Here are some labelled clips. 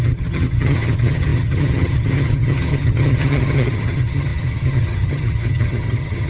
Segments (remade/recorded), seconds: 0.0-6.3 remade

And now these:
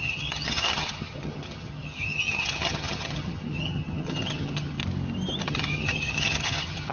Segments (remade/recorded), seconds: 0.0-4.8 remade; 4.8-5.4 recorded; 5.4-6.9 remade

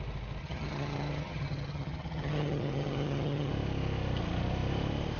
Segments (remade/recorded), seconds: 0.0-0.4 recorded; 0.4-3.5 remade; 3.5-5.2 recorded

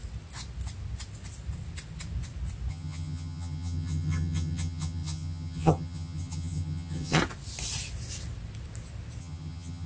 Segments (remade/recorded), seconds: 0.0-2.7 recorded; 2.7-7.2 remade; 7.2-9.2 recorded; 9.2-9.9 remade

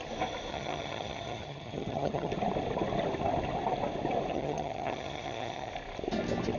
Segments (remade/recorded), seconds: 0.0-0.5 recorded; 0.5-2.3 remade; 2.3-4.3 recorded; 4.3-5.7 remade; 5.7-6.6 recorded

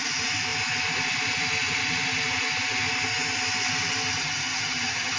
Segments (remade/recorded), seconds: 0.0-4.2 recorded; 4.2-5.2 remade

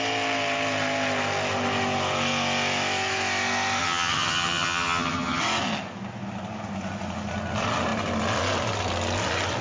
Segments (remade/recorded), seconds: 0.0-3.8 recorded; 3.8-5.4 remade; 5.4-9.6 recorded